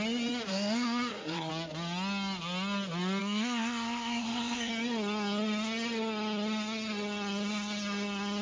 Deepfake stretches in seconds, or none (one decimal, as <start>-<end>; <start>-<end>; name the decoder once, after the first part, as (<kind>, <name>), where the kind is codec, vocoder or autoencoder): 0.5-1.5 (codec, SNAC); 3.2-4.7